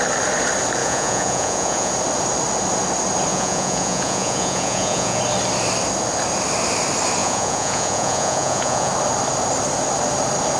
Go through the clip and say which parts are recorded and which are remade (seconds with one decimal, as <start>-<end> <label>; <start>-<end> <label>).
0.0-0.8 recorded; 0.8-1.9 remade; 1.9-3.3 recorded; 3.3-5.2 remade; 5.2-7.2 recorded; 7.2-8.9 remade; 8.9-10.6 recorded